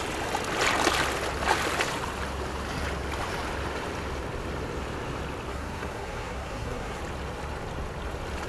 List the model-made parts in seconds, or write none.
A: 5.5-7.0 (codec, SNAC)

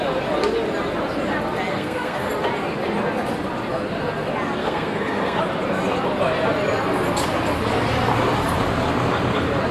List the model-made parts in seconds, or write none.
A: 1.7-2.3 (codec, SNAC); 4.6-5.4

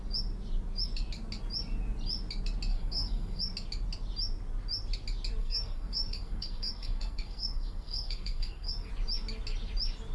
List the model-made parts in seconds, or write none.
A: 2.7-3.4 (codec, SNAC); 5.4-8.9

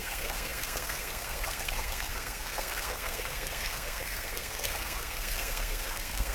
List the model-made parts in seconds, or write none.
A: 0.0-6.3 (codec, SNAC)